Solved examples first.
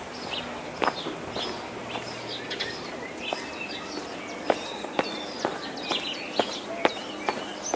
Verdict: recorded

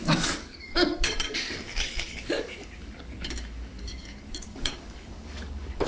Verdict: remade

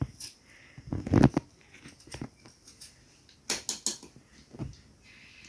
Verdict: recorded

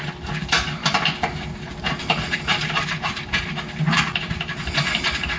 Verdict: remade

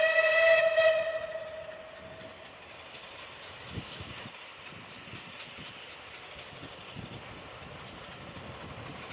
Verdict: recorded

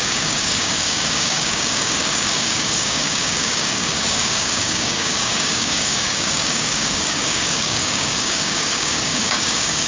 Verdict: remade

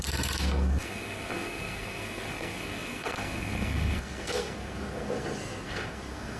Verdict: remade